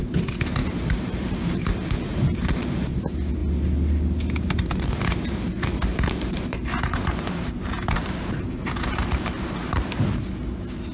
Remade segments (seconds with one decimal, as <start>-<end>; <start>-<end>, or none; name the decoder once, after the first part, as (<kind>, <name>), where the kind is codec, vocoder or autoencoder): 0.6-2.6 (vocoder, BigVGAN v2); 5.9-9.8